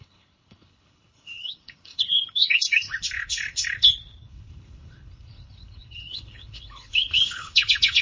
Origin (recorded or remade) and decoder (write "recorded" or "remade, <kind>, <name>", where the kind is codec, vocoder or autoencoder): remade, codec, HILCodec